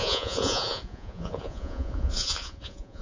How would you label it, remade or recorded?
remade